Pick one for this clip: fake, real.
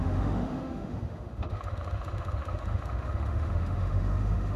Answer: fake